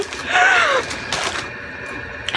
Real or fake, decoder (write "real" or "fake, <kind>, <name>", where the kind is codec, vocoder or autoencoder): real